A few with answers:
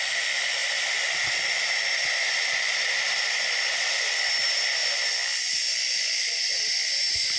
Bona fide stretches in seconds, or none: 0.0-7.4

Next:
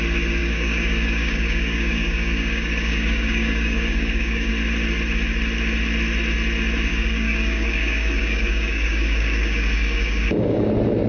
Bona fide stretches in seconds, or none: 0.0-0.4; 4.5-6.9; 10.7-11.1